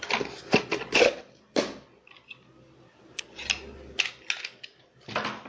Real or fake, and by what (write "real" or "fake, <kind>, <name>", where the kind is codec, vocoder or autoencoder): real